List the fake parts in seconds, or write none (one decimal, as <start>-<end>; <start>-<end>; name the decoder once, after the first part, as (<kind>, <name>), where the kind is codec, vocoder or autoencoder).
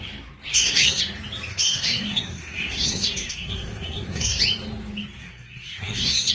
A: 0.5-1.0 (codec, SNAC); 1.5-4.4; 5.2-6.3